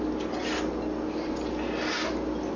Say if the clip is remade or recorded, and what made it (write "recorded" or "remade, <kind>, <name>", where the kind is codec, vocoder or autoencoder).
recorded